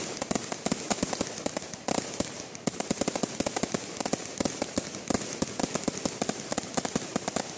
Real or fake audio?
real